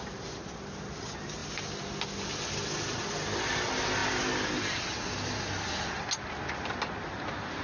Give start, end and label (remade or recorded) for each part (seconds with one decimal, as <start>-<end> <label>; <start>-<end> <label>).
0.0-7.6 recorded